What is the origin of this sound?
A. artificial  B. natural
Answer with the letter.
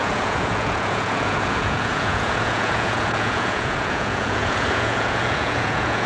A